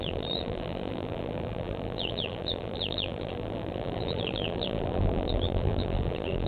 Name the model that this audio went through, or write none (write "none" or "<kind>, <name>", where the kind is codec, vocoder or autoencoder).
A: vocoder, BigVGAN v2